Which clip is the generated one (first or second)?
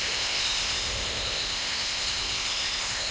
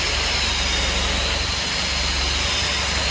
first